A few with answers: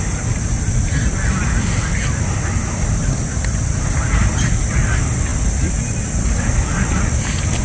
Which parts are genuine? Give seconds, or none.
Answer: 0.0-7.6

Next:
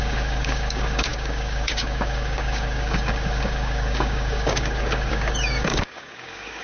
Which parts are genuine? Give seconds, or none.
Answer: none

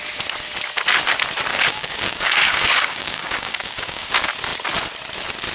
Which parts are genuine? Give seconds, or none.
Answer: 0.0-1.5; 4.1-5.5

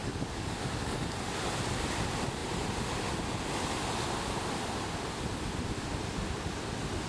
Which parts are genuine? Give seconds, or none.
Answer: 1.1-7.1

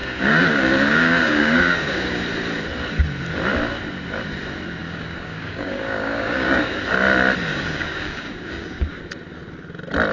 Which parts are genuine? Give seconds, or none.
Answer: 2.2-4.8; 6.8-7.5; 9.0-10.1

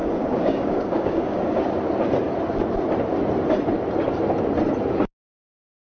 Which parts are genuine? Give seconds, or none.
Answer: 1.6-5.9

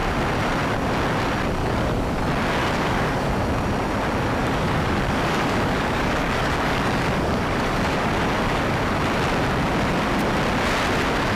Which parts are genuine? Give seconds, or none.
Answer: 0.0-1.6; 2.2-2.6; 3.3-4.4; 8.1-11.4

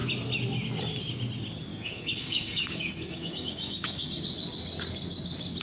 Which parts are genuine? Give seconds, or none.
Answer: 0.0-1.7; 4.2-5.6